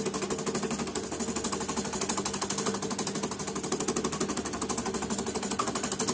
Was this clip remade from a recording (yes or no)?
no